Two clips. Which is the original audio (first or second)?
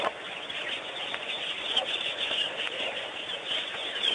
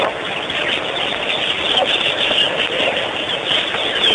second